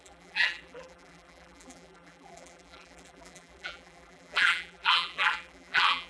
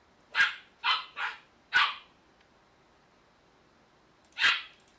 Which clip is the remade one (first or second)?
first